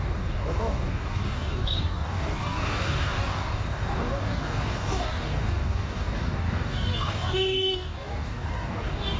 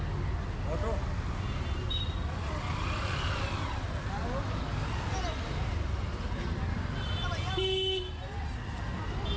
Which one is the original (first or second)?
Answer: second